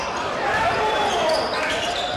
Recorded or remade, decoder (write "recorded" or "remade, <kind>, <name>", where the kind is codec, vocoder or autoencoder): remade, vocoder, BigVGAN v2